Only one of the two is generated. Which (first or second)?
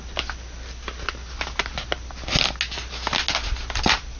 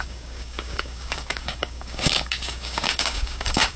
second